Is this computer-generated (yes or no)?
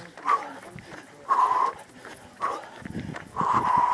no